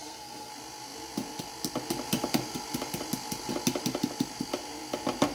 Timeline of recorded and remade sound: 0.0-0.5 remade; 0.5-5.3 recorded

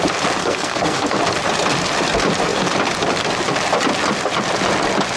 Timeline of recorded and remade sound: 0.0-0.4 recorded; 0.4-1.2 remade; 1.2-5.2 recorded